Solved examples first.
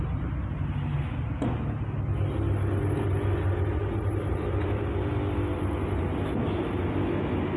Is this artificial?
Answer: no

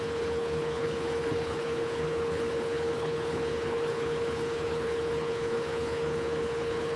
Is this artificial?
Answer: yes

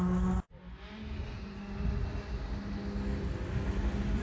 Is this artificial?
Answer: no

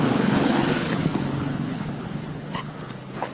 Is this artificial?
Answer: yes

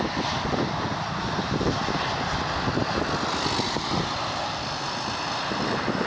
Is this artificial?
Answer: no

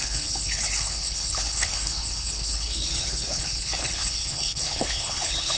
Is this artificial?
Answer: yes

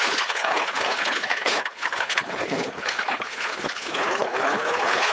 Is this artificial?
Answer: yes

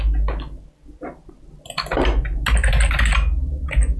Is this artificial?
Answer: no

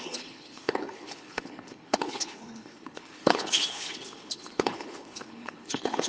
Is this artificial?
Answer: yes